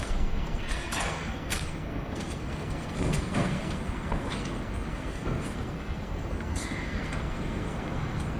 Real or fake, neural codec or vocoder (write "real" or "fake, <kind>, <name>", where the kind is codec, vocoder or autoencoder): fake, codec, SNAC